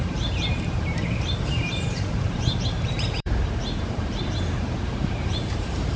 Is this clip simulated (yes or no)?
yes